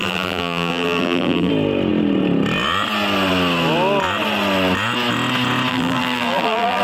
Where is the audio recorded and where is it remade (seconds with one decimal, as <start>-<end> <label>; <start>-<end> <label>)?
0.0-1.5 remade; 1.5-5.7 recorded; 5.7-6.8 remade